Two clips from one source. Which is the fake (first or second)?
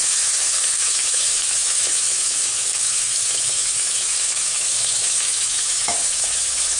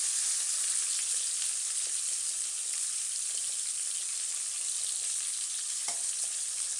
first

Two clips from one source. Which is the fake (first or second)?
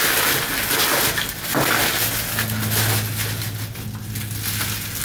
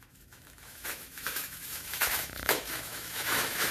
second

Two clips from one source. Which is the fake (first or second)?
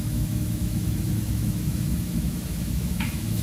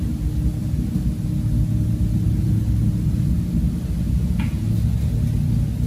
first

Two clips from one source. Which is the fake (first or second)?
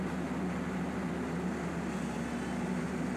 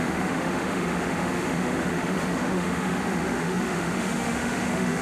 second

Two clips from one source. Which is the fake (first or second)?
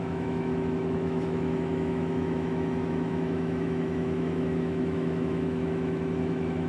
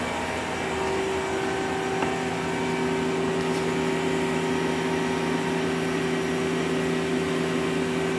first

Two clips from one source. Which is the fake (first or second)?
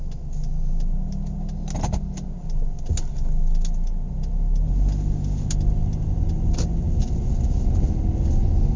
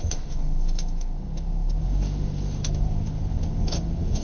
second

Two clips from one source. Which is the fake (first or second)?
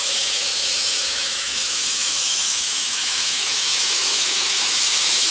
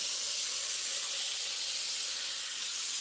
first